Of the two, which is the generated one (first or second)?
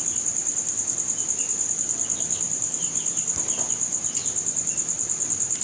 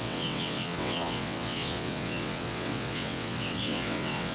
second